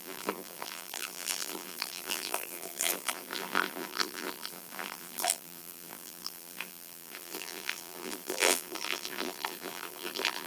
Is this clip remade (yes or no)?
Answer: yes